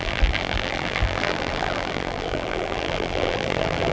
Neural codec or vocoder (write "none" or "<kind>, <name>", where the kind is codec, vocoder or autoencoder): vocoder, BigVGAN v2